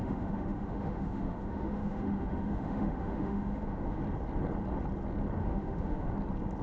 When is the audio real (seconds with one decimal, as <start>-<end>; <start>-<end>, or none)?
4.0-5.4; 6.1-6.6